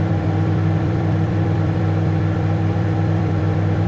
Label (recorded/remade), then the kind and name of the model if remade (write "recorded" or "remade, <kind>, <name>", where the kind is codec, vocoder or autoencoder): remade, vocoder, BigVGAN v2